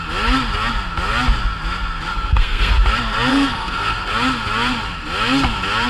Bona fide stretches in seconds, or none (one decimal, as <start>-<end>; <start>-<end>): 0.0-2.1; 2.7-3.3; 4.1-5.9